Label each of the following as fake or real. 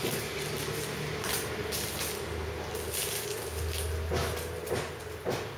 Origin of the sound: real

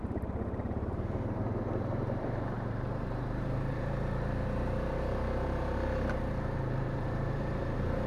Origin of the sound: fake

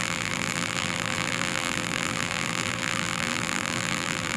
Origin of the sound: fake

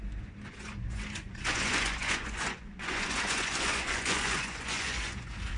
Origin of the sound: fake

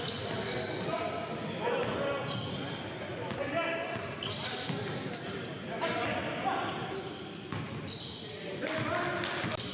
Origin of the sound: real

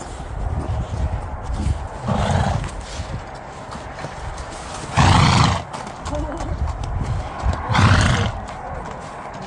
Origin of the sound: real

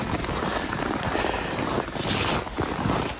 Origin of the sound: real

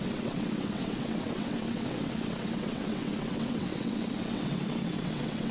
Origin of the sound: fake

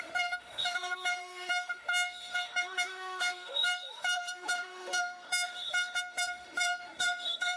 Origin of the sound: fake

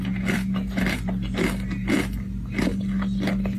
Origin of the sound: real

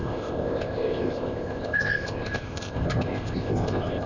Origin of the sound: fake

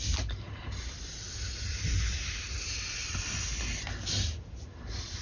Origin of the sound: real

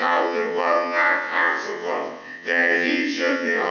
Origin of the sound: fake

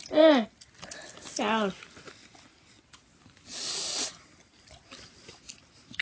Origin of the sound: real